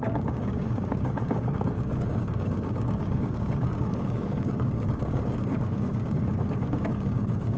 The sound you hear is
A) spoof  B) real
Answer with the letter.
A